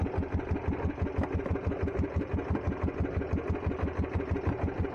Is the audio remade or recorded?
recorded